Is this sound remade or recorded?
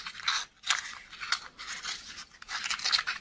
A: recorded